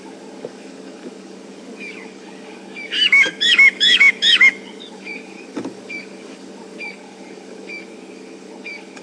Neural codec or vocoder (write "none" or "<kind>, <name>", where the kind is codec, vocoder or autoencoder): codec, DAC